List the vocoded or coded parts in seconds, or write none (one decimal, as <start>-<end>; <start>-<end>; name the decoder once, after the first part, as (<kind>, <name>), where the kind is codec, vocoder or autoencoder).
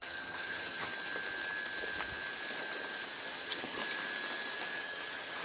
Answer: 0.0-0.9 (vocoder, HiFi-GAN); 3.3-3.8; 4.8-5.4